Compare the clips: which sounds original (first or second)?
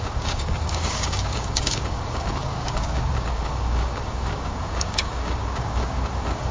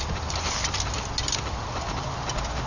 second